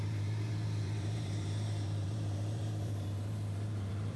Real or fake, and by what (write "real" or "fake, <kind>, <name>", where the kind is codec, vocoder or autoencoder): fake, vocoder, BigVGAN v2